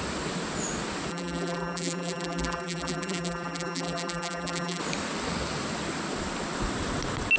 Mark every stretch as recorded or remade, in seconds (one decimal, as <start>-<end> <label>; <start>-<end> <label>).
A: 0.0-1.1 recorded; 1.1-4.8 remade; 4.8-7.4 recorded